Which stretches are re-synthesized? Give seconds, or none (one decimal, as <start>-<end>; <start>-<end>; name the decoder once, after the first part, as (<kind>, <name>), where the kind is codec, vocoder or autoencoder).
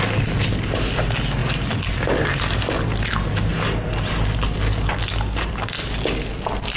none